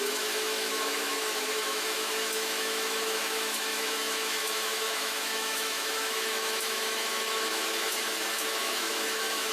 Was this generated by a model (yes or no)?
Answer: yes